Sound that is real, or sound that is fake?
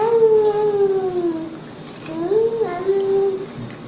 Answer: real